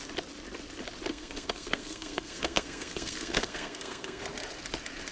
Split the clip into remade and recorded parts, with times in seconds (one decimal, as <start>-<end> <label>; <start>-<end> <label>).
0.0-1.1 recorded; 1.1-4.2 remade; 4.2-5.1 recorded

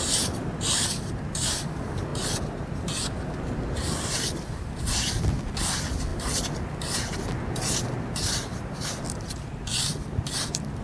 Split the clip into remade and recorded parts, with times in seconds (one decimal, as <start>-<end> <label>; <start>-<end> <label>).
0.0-10.8 recorded